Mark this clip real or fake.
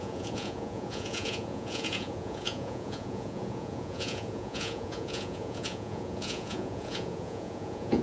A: fake